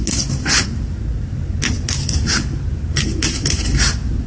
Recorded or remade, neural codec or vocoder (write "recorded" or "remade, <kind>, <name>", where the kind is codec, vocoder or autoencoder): recorded